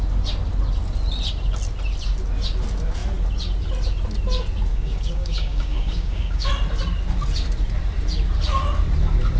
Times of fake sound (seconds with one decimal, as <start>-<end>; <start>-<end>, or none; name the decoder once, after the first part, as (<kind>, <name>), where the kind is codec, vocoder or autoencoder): 4.7-6.5 (codec, DAC)